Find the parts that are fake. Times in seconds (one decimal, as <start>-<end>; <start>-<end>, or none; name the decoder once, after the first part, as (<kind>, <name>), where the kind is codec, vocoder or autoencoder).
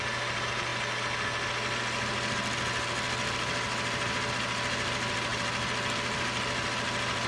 none